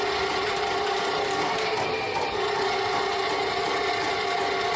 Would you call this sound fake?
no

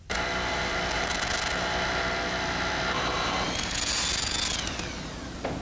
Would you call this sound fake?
no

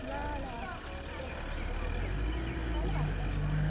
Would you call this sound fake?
no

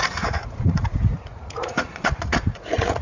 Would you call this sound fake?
yes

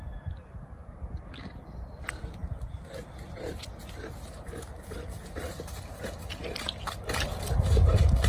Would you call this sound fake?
no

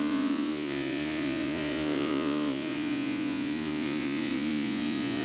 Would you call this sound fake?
yes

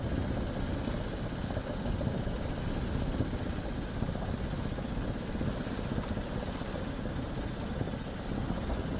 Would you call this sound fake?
no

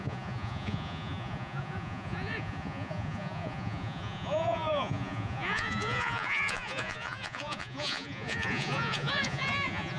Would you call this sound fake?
yes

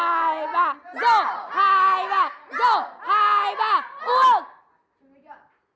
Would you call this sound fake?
no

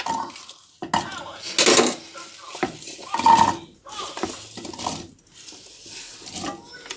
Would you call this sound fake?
no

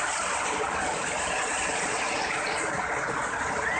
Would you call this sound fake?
no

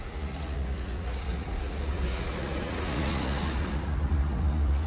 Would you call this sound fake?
yes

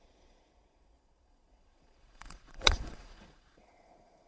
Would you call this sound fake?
yes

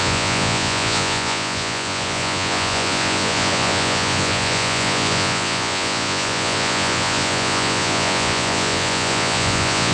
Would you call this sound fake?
yes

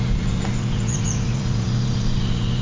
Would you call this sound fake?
yes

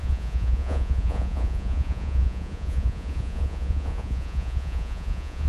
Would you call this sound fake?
yes